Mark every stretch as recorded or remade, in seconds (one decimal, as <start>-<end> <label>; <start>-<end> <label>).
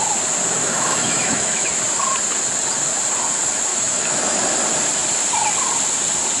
0.0-0.6 recorded; 0.6-1.7 remade; 1.7-3.7 recorded; 3.7-4.4 remade; 4.4-6.4 recorded